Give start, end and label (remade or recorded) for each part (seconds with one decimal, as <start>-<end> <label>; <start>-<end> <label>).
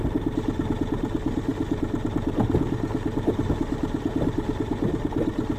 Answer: 0.0-1.5 remade; 1.5-4.1 recorded; 4.1-5.6 remade